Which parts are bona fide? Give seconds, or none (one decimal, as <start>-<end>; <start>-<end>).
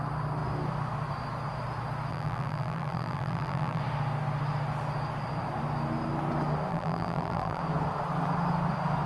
0.0-2.1; 3.8-6.7; 7.6-9.1